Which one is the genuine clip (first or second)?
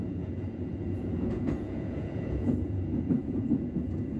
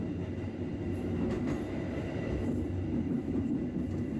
second